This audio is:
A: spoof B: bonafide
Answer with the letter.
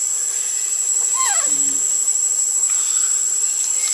B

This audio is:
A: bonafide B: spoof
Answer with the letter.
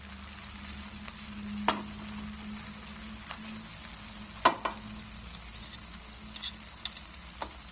A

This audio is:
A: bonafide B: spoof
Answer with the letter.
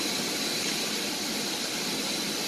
B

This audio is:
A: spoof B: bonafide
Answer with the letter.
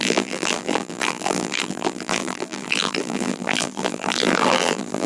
A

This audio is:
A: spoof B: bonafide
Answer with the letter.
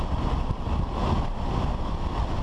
A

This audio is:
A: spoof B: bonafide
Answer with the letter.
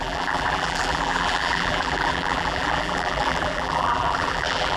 A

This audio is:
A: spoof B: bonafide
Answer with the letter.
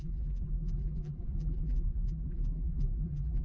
A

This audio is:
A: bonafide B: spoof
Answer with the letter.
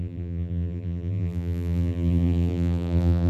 B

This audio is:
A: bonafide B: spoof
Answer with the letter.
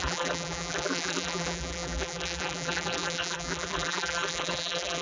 B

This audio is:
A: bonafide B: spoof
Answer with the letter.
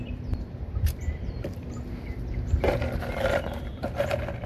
B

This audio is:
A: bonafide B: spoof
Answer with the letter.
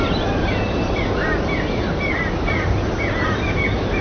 B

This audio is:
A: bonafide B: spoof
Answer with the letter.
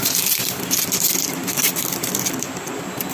B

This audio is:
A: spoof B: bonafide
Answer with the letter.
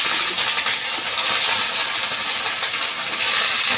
B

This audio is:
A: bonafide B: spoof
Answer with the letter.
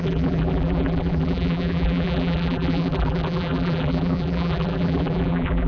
B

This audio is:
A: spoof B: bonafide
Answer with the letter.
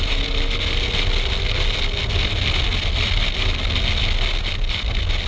B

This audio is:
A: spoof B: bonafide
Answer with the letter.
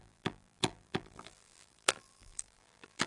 A